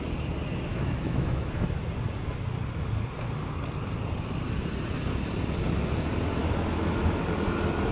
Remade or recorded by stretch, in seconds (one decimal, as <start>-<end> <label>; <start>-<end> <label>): 0.0-0.7 recorded; 0.7-1.8 remade; 1.8-6.4 recorded; 6.4-7.2 remade; 7.2-7.9 recorded